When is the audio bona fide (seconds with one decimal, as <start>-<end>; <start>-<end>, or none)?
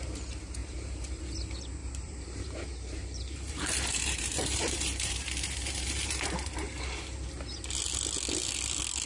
0.0-0.6; 1.2-1.8; 6.8-9.1